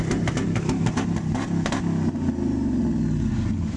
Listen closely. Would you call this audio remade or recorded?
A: recorded